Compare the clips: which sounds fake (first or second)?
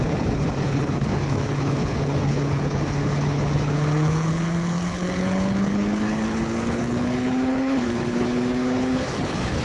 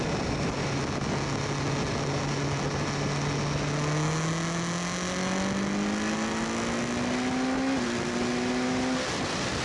first